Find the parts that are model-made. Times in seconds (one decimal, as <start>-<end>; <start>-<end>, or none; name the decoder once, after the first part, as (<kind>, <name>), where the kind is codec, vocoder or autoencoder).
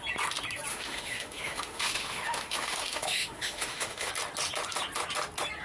0.7-4.1 (autoencoder, DAC-VAE)